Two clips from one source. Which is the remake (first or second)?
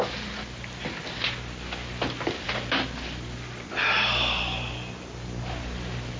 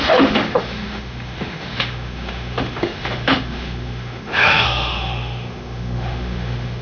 second